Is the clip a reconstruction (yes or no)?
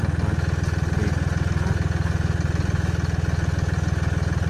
no